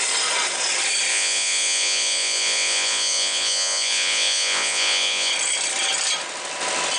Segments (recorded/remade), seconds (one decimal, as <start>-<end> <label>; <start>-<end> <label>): 0.0-1.1 recorded; 1.1-5.3 remade; 5.3-7.0 recorded